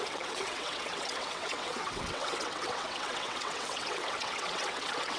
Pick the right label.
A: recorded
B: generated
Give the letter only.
B